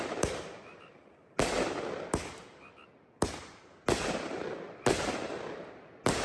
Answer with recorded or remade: recorded